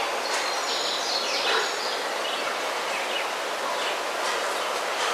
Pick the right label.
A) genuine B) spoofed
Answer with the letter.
A